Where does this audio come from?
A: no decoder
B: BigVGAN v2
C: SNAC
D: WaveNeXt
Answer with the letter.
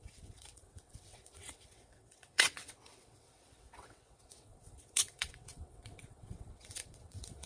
D